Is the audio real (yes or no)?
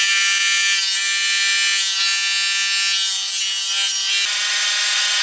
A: yes